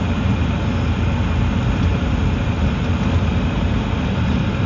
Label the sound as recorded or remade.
recorded